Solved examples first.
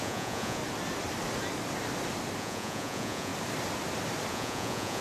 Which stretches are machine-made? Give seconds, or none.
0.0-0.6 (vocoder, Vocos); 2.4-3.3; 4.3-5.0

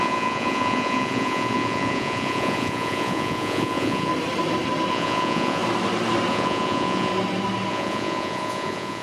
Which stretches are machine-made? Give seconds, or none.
0.0-4.1 (vocoder, Vocos); 4.9-5.6; 6.3-7.1; 7.7-9.0

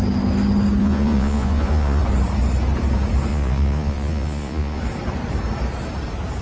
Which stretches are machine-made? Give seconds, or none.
0.8-2.0 (vocoder, Vocos); 3.3-4.8